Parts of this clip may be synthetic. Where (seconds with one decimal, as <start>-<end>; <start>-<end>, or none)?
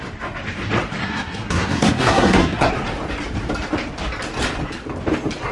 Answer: 1.0-2.7